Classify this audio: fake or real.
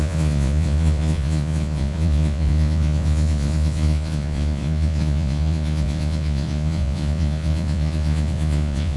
fake